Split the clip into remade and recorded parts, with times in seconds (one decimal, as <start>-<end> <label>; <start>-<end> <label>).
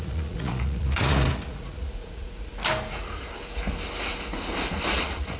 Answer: 0.0-2.5 remade; 2.5-4.9 recorded; 4.9-5.4 remade